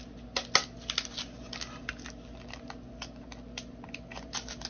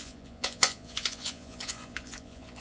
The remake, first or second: second